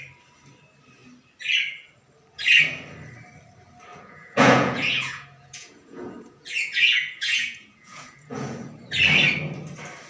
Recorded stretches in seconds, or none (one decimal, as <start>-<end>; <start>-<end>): 0.0-3.9; 8.7-10.1